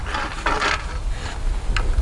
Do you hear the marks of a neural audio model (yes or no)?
no